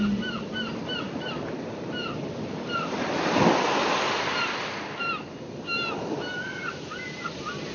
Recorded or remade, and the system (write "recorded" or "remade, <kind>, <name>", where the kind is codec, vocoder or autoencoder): recorded